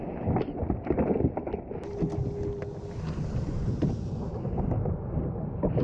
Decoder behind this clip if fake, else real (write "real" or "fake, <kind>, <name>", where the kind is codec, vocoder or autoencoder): real